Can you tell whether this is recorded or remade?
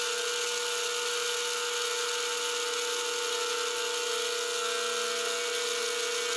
recorded